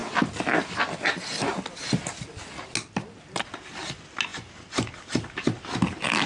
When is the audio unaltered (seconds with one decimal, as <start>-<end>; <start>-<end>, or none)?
0.0-6.3